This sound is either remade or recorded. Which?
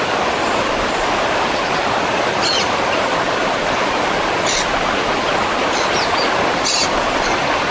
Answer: recorded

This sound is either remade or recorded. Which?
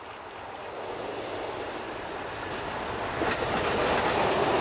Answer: recorded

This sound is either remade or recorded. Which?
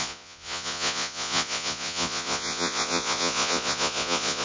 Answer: remade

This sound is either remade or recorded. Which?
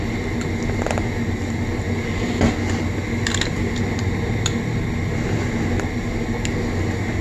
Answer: recorded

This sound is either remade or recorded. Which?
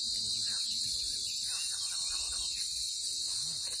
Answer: recorded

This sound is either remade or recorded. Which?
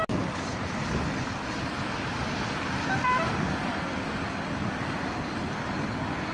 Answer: recorded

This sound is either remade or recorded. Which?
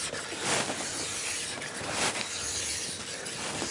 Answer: recorded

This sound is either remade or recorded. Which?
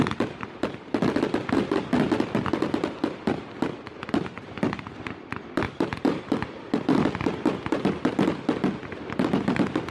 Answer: recorded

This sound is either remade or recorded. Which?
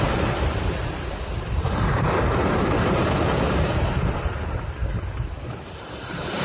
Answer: remade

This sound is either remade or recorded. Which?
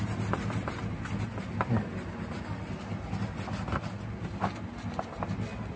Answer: recorded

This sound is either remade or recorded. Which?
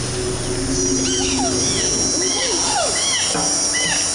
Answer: recorded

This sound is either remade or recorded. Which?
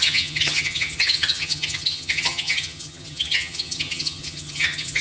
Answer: remade